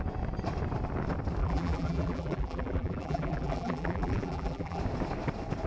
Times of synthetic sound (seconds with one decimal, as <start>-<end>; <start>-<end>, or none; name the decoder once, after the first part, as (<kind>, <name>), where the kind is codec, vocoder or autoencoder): 1.4-4.8 (vocoder, BigVGAN v2)